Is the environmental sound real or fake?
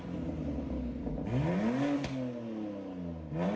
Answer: real